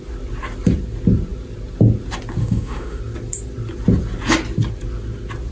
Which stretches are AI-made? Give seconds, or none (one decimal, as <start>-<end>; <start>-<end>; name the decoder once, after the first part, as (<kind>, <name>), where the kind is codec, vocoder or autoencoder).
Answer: 2.4-3.0 (autoencoder, DAC-VAE)